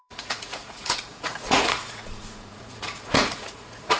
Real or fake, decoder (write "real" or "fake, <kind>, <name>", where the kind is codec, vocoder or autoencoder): fake, vocoder, Vocos